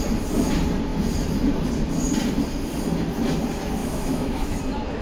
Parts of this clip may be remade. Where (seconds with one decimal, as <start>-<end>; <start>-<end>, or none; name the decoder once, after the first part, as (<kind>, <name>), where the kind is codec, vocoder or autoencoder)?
3.8-4.6 (autoencoder, DAC-VAE)